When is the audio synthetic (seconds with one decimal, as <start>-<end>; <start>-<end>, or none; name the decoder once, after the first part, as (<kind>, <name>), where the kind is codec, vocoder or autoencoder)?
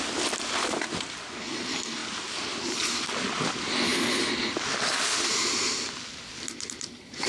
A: 0.0-2.0 (vocoder, BigVGAN v2); 2.6-3.9; 6.6-7.3